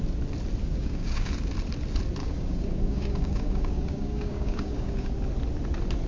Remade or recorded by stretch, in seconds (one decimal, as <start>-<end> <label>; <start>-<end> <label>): 0.0-0.6 recorded; 0.6-1.3 remade; 1.3-2.2 recorded; 2.2-5.1 remade; 5.1-6.1 recorded